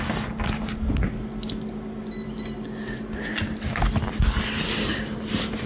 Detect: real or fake real